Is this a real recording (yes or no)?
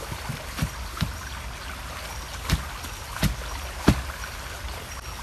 yes